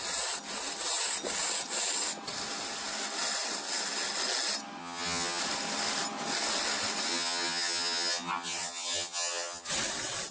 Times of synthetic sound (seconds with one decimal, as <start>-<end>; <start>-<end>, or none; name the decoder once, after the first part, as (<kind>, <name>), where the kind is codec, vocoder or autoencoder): 4.8-5.4 (vocoder, HiFi-GAN); 7.1-9.7